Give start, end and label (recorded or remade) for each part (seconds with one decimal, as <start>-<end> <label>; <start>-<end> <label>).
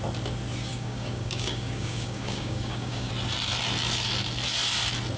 0.0-0.7 recorded; 0.7-3.1 remade; 3.1-5.2 recorded